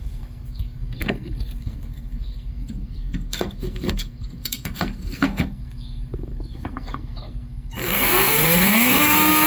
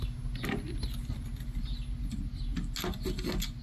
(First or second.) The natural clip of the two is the second